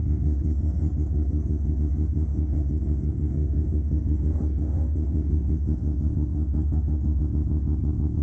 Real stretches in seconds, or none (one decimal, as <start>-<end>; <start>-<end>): 1.8-2.3; 7.2-8.2